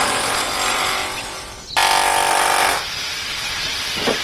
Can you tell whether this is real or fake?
real